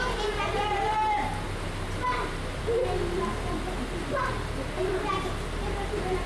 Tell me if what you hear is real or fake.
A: real